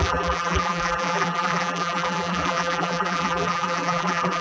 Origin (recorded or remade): remade